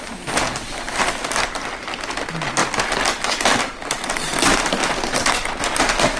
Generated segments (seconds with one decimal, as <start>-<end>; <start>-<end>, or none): none